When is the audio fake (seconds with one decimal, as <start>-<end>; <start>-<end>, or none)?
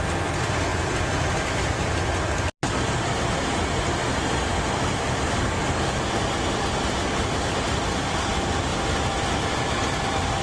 none